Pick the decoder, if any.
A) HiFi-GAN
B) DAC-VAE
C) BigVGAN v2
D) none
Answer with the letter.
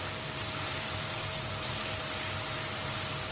C